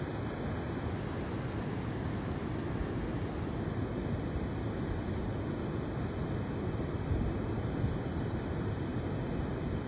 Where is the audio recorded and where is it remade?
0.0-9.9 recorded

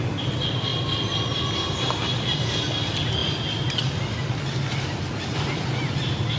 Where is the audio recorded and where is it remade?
0.0-6.4 recorded

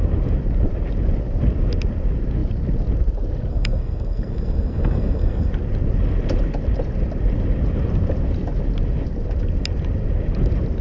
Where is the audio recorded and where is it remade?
0.0-3.5 recorded; 3.5-5.5 remade; 5.5-10.8 recorded

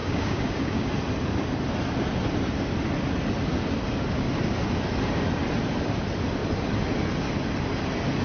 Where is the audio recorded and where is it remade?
0.0-0.9 remade; 0.9-8.2 recorded

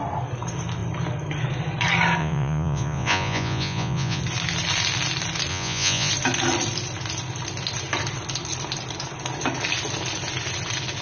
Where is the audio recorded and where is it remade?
0.0-2.2 recorded; 2.2-4.2 remade; 4.2-5.5 recorded; 5.5-6.1 remade; 6.1-11.0 recorded

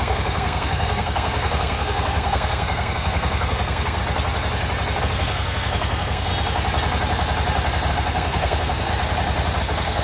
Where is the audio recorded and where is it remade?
0.0-4.0 remade; 4.0-5.0 recorded; 5.0-6.3 remade; 6.3-7.9 recorded; 7.9-8.9 remade; 8.9-9.6 recorded; 9.6-10.0 remade

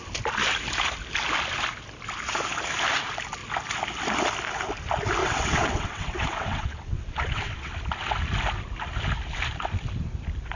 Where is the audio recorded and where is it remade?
0.0-5.2 recorded; 5.2-7.7 remade; 7.7-10.6 recorded

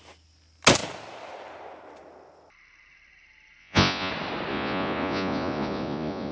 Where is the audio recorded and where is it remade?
0.0-3.6 recorded; 3.6-4.1 remade; 4.1-4.5 recorded; 4.5-6.3 remade